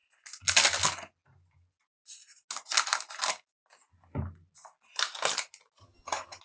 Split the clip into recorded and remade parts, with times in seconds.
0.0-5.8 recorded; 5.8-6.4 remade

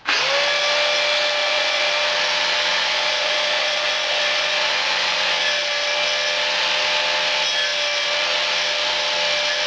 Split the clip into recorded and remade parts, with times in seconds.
0.0-1.4 recorded; 1.4-1.9 remade; 1.9-2.7 recorded; 2.7-5.4 remade; 5.4-9.7 recorded

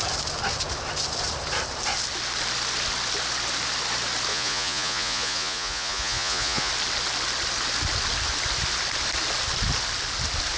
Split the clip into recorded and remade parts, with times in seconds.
0.0-4.3 recorded; 4.3-6.7 remade; 6.7-10.6 recorded

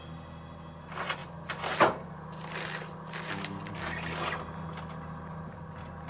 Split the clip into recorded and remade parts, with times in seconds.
0.0-6.1 recorded